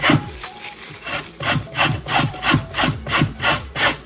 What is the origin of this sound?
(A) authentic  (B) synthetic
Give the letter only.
A